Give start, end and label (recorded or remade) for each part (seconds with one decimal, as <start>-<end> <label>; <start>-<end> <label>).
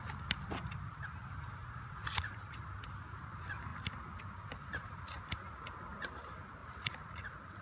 0.0-1.6 recorded; 1.6-2.6 remade; 2.6-6.6 recorded; 6.6-7.6 remade